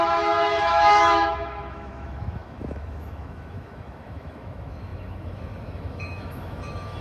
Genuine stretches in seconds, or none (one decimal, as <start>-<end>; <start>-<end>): none